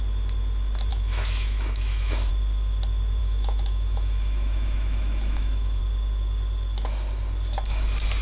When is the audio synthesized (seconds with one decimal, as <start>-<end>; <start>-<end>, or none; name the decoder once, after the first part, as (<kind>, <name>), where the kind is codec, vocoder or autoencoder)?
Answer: 0.9-2.3 (autoencoder, DAC-VAE); 3.2-5.8